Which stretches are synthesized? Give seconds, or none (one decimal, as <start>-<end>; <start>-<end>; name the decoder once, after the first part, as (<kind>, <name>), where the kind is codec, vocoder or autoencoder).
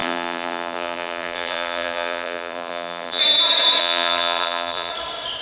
0.0-3.2 (vocoder, BigVGAN v2); 3.8-4.9